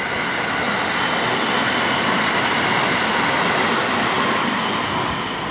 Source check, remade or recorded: recorded